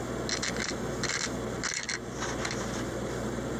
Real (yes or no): yes